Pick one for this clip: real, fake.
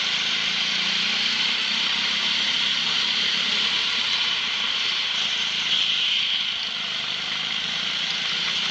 real